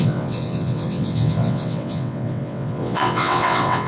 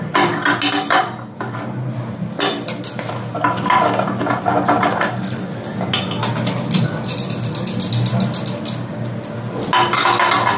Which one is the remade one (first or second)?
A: first